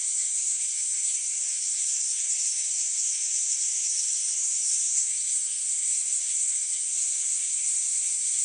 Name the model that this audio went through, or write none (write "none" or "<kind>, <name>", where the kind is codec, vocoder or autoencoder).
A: codec, SNAC